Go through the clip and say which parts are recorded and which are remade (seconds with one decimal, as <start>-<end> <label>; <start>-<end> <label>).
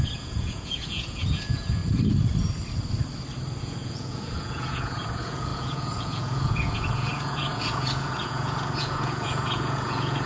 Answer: 0.0-1.8 remade; 1.8-3.6 recorded; 3.6-10.3 remade